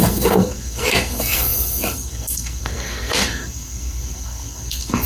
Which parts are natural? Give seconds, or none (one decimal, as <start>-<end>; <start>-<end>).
none